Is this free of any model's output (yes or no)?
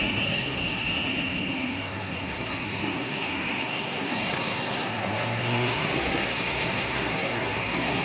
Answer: no